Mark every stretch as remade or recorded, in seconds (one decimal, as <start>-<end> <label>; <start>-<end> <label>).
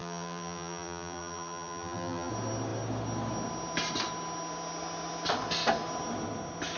0.0-2.3 remade; 2.3-6.8 recorded